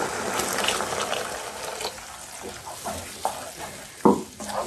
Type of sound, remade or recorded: recorded